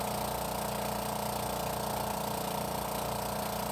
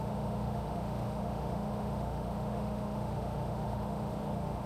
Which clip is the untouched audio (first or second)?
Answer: first